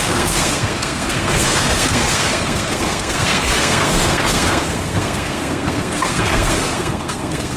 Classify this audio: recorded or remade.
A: remade